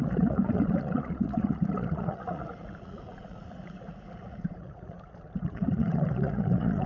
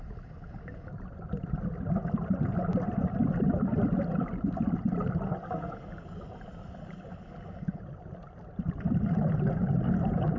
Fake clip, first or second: first